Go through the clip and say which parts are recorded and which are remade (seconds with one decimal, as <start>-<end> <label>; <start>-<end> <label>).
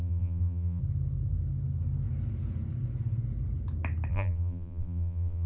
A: 0.0-0.8 remade; 0.8-4.1 recorded; 4.1-5.5 remade